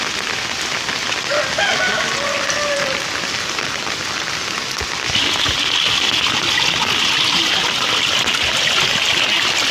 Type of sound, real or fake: real